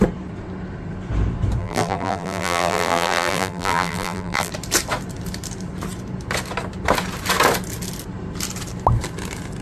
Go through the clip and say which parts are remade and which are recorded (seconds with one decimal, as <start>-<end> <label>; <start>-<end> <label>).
0.0-1.6 recorded; 1.6-4.5 remade; 4.5-9.6 recorded

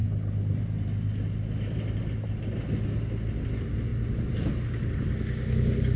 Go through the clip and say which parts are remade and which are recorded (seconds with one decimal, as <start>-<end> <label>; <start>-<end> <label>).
0.0-6.0 recorded